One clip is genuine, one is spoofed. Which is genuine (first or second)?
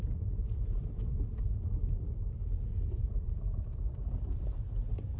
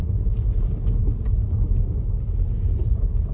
second